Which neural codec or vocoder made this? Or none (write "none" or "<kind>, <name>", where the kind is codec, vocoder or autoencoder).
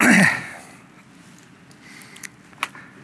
none